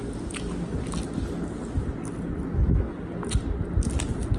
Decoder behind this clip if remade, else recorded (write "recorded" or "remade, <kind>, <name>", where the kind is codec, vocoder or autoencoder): recorded